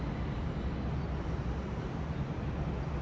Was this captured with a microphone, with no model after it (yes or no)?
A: yes